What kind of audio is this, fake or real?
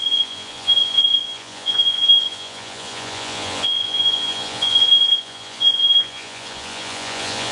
fake